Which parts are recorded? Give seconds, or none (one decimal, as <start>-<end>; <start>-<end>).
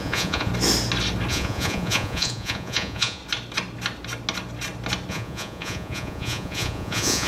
0.5-1.3; 3.2-5.1